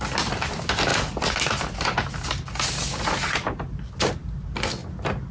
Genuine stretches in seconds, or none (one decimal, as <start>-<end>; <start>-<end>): 0.0-5.3